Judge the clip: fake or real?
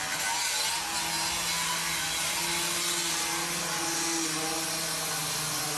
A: real